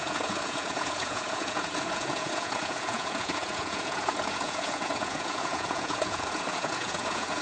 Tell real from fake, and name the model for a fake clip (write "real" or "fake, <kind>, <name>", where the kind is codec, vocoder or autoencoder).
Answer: fake, vocoder, Vocos